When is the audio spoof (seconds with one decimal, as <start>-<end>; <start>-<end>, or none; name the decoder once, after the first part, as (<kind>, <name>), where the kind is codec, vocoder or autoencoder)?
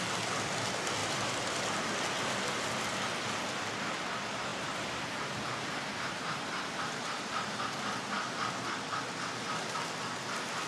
1.0-1.6 (vocoder, BigVGAN v2); 4.5-7.6